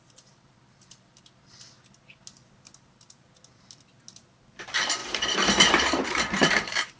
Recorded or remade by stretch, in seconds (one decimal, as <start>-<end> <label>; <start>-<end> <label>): 0.0-5.0 recorded; 5.0-7.0 remade